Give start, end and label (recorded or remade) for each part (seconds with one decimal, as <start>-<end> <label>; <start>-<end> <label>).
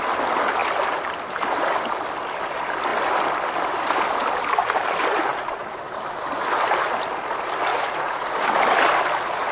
0.0-7.7 recorded; 7.7-8.4 remade; 8.4-9.5 recorded